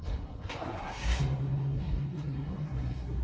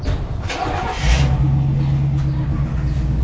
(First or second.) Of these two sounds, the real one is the second